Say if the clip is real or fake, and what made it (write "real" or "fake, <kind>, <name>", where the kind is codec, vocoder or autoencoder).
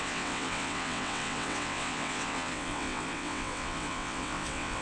fake, vocoder, WaveNeXt